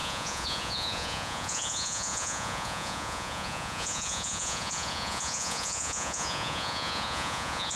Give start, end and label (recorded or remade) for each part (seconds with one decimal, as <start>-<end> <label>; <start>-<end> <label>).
0.0-7.8 remade